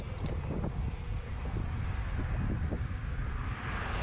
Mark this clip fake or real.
fake